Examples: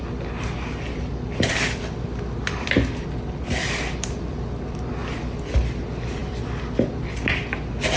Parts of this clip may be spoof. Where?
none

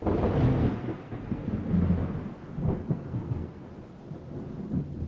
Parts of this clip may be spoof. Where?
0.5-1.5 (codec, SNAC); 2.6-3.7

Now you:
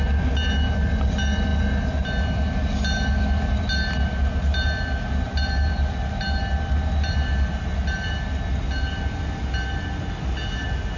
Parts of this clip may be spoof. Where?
none

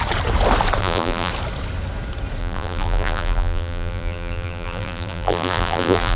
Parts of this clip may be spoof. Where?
0.8-1.3 (vocoder, BigVGAN v2); 2.4-6.2